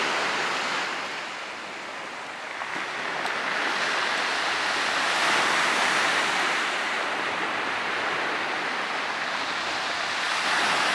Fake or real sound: real